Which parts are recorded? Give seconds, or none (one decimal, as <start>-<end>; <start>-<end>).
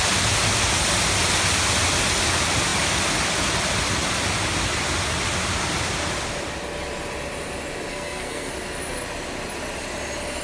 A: 0.0-7.9; 8.5-10.4